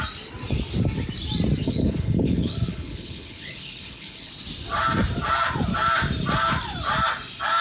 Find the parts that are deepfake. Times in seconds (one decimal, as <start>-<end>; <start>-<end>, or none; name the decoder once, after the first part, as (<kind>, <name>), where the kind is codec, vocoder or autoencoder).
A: 1.6-4.3 (codec, HILCodec)